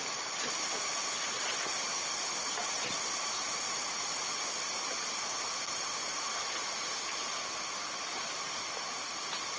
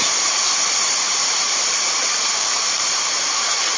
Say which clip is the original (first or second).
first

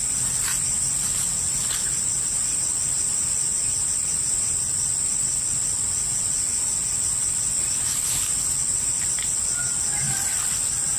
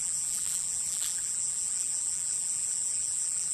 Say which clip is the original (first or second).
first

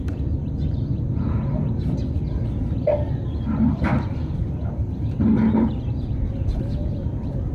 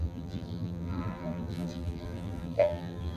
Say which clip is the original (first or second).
first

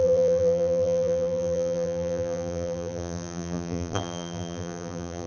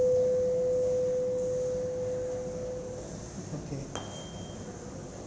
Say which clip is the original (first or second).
second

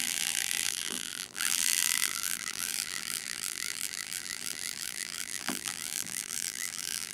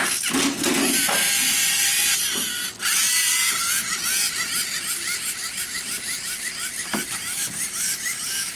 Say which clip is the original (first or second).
second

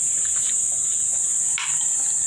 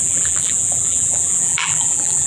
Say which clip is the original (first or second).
first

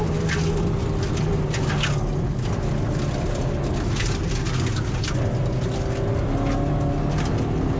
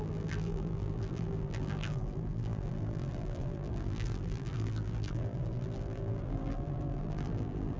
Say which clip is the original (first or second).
first